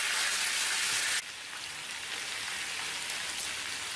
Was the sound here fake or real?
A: real